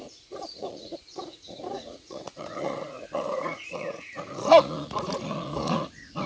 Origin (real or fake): fake